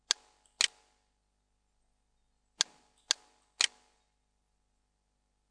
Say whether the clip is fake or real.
real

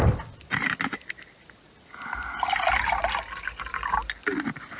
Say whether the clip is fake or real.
real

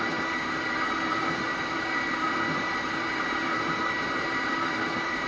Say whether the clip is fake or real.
fake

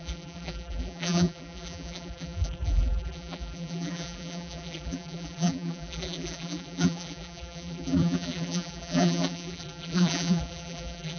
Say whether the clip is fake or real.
fake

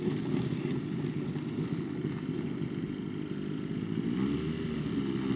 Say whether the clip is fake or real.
real